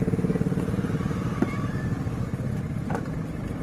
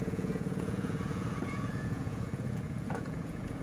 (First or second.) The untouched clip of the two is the first